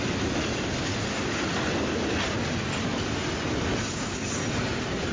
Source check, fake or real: real